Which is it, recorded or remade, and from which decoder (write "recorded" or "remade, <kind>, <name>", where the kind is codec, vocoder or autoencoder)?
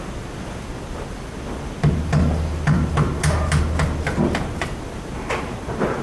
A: recorded